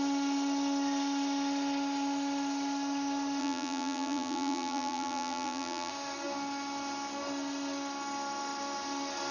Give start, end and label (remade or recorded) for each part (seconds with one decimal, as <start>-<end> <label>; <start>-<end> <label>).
0.0-3.4 recorded; 3.4-5.9 remade; 5.9-9.3 recorded